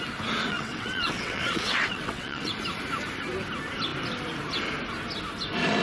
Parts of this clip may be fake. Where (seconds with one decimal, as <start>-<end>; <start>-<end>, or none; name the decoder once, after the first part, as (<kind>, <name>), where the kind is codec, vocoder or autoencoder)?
0.5-2.5 (vocoder, WaveNeXt)